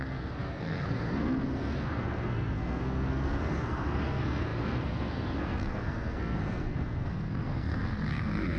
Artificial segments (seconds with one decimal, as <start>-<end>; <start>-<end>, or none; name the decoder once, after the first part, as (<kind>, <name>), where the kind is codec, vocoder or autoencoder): 0.0-8.6 (codec, SNAC)